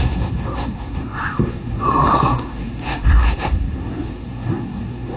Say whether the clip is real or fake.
fake